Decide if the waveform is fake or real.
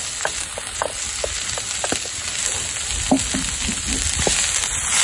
real